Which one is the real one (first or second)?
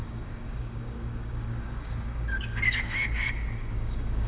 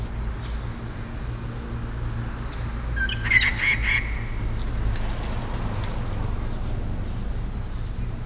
second